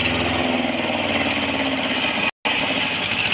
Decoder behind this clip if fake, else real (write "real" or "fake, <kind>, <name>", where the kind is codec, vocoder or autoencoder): real